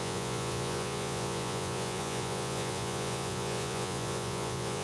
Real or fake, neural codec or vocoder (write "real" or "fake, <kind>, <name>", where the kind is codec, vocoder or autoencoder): fake, vocoder, Vocos